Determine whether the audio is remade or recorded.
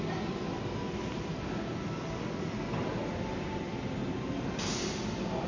recorded